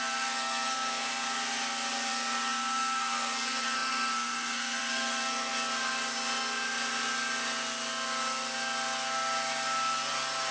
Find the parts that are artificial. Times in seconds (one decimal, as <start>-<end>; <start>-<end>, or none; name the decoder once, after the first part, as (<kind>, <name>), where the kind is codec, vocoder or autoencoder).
0.0-1.1 (codec, SNAC); 2.1-5.5